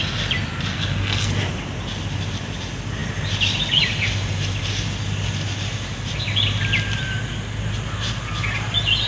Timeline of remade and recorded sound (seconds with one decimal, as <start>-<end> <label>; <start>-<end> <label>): 0.0-0.7 recorded; 0.7-1.3 remade; 1.3-9.1 recorded